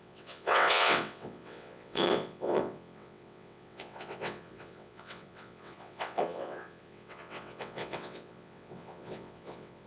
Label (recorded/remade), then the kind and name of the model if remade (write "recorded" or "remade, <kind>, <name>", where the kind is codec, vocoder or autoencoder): remade, vocoder, WaveNeXt